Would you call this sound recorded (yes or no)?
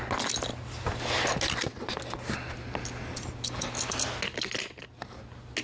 yes